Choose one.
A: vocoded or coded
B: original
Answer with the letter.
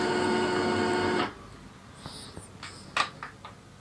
B